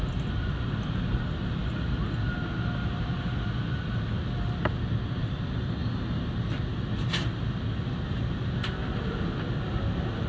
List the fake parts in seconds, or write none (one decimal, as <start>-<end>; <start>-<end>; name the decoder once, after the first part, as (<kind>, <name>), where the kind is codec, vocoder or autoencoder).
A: none